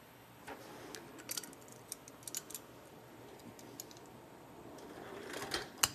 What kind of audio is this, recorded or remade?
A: recorded